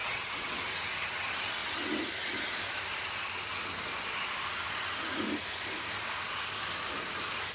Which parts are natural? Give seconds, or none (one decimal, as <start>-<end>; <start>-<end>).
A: 0.6-7.5